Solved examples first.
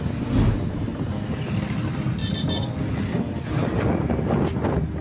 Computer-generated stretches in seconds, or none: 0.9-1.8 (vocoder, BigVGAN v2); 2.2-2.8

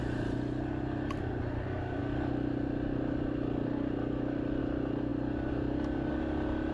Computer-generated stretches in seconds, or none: none

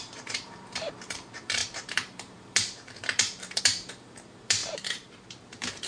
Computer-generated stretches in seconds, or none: 0.0-5.9 (vocoder, BigVGAN v2)

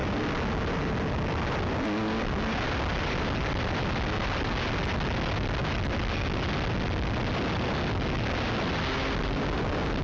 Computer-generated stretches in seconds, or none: none

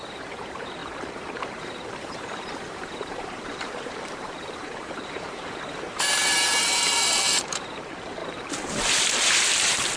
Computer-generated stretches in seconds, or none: 0.0-8.2 (vocoder, BigVGAN v2); 9.0-10.0

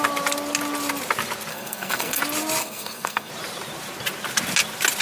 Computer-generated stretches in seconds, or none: 1.5-2.2 (codec, SNAC); 2.6-3.3